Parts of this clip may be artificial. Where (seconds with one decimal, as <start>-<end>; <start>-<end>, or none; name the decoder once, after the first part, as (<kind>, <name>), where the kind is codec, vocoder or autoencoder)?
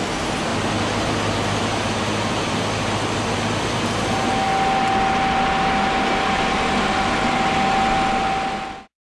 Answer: none